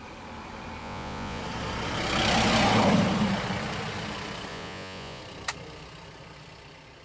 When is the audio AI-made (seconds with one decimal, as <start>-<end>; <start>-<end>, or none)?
0.8-1.4; 4.5-5.2